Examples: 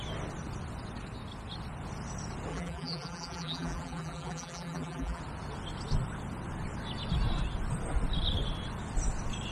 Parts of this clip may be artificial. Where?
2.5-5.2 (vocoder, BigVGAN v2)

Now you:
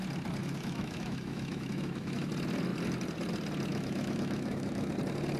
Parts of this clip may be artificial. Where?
0.4-2.3 (autoencoder, DAC-VAE); 3.7-4.9

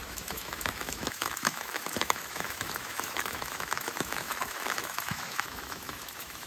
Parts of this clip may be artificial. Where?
0.0-6.5 (autoencoder, DAC-VAE)

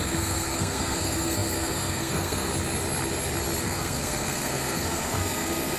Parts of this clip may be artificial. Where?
0.0-2.5 (codec, SNAC); 3.6-5.8

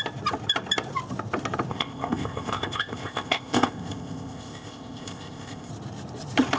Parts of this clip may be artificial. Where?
1.7-5.7 (codec, ZipCodec)

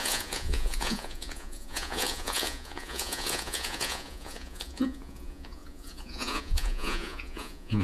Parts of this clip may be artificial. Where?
0.0-7.8 (vocoder, Vocos)